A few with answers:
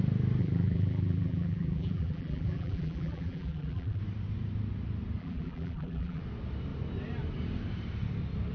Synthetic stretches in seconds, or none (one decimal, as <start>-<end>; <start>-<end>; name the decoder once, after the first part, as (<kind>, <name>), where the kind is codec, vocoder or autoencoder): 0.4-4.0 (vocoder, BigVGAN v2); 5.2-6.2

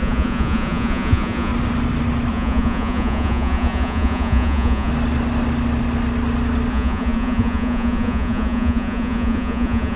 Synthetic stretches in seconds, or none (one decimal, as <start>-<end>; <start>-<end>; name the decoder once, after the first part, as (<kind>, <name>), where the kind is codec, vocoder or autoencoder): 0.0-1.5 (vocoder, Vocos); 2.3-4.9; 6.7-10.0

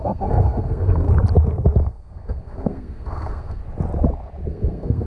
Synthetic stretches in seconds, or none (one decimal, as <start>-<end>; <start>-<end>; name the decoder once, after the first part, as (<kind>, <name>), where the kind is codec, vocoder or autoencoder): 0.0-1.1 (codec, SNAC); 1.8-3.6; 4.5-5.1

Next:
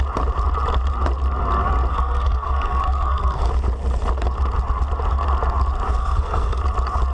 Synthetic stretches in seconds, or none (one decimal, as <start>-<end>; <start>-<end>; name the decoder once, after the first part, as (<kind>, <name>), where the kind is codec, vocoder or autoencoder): 1.9-3.5 (codec, SNAC); 6.0-6.6

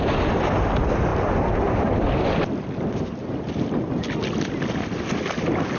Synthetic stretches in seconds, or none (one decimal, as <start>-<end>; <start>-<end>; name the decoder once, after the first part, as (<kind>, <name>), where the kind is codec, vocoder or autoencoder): none